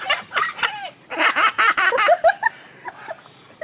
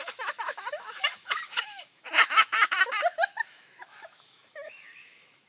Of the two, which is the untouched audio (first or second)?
first